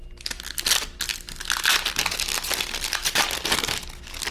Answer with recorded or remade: recorded